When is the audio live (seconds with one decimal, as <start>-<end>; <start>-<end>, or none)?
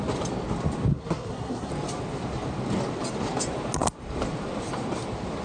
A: 0.0-0.9; 1.7-5.4